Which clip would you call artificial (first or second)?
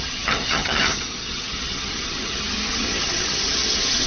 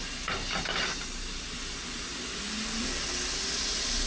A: first